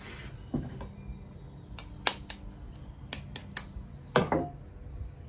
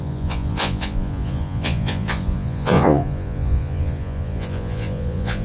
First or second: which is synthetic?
second